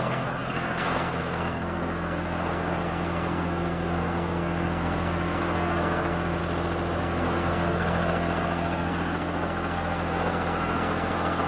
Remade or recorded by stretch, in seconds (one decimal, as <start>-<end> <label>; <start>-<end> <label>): 0.0-6.4 remade; 6.4-7.0 recorded; 7.0-11.5 remade